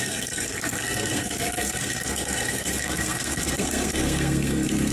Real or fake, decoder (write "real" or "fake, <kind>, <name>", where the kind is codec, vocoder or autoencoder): fake, codec, SNAC